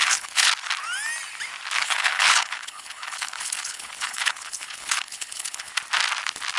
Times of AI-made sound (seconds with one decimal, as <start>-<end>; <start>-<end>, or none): 0.0-0.5; 1.8-5.7